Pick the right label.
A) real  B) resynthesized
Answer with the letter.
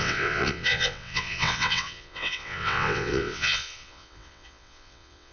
B